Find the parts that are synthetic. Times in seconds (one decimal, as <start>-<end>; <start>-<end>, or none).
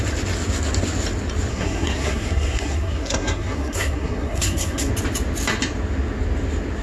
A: 1.5-4.9